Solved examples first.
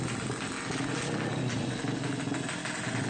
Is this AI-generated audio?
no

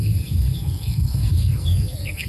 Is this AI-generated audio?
yes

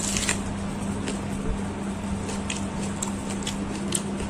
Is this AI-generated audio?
no